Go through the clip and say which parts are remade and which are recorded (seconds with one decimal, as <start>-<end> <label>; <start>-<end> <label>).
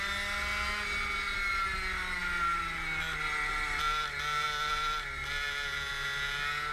0.0-6.7 recorded